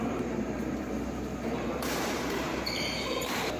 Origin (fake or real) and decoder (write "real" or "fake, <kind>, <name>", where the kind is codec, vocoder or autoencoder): fake, vocoder, BigVGAN v2